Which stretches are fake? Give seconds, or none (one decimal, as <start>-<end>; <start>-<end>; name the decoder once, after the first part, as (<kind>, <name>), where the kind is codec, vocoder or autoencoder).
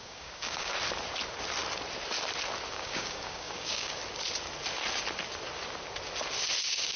0.0-0.7 (codec, DAC); 2.7-4.0; 6.6-7.0